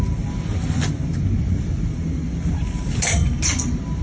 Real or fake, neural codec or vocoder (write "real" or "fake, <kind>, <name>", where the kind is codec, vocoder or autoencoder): real